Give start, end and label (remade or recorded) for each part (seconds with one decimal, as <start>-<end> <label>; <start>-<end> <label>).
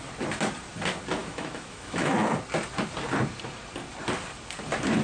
0.0-1.2 recorded; 1.2-2.1 remade; 2.1-5.0 recorded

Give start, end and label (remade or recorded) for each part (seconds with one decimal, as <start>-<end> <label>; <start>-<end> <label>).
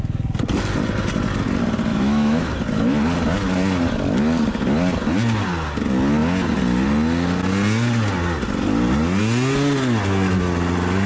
0.0-1.9 recorded; 1.9-2.5 remade; 2.5-11.1 recorded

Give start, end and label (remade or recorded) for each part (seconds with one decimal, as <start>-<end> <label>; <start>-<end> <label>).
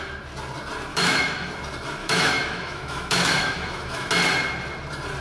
0.0-0.9 recorded; 0.9-1.5 remade; 1.5-2.0 recorded; 2.0-4.1 remade; 4.1-5.2 recorded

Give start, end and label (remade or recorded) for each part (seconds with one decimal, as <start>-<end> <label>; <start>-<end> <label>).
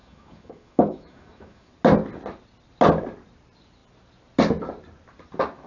0.0-1.7 remade; 1.7-5.7 recorded